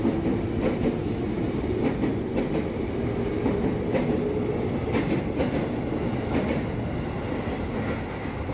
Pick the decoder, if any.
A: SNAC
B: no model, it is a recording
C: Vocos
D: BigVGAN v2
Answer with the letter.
B